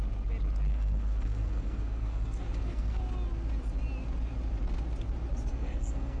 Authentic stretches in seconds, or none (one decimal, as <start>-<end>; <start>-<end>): 0.0-0.7; 3.0-5.5